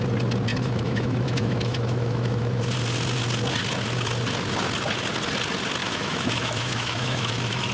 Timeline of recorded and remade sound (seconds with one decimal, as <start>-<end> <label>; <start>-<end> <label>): 0.0-0.5 recorded; 0.5-2.6 remade; 2.6-5.8 recorded; 5.8-7.7 remade

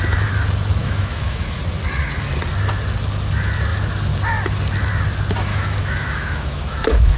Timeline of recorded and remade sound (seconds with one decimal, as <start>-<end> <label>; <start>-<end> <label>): 0.0-0.8 recorded; 0.8-1.6 remade; 1.6-5.5 recorded; 5.5-7.2 remade

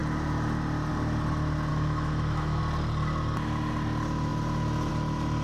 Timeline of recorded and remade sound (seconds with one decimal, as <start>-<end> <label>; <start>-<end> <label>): 0.0-1.7 recorded; 1.7-2.6 remade; 2.6-5.4 recorded

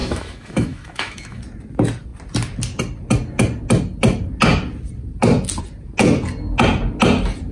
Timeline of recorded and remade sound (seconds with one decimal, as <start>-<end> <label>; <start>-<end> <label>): 0.0-1.4 remade; 1.4-7.5 recorded

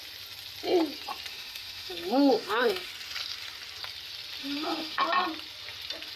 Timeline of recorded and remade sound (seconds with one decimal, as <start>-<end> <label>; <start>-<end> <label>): 0.0-1.3 recorded; 1.3-2.9 remade; 2.9-4.4 recorded; 4.4-5.0 remade; 5.0-6.2 recorded

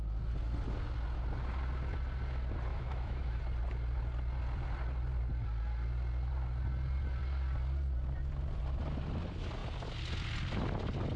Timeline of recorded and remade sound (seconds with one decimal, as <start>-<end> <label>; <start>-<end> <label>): 0.0-2.7 recorded; 2.7-3.4 remade; 3.4-11.2 recorded